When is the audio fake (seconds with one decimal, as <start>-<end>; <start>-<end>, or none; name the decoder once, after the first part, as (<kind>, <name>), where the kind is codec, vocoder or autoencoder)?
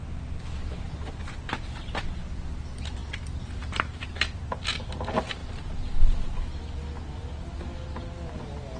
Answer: none